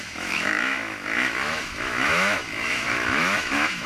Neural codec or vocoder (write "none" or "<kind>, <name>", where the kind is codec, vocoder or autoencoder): autoencoder, DAC-VAE